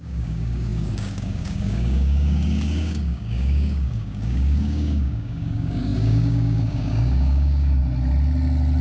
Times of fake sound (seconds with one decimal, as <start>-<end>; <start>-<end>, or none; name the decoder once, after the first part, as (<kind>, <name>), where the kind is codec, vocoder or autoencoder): 0.0-7.8 (codec, DAC)